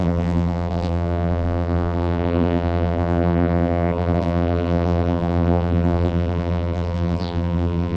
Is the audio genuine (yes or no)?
no